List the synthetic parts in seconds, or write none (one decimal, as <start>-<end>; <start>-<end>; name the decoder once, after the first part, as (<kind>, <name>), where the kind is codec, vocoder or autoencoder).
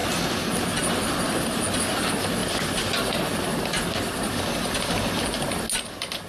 none